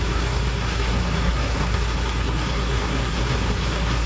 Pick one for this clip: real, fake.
fake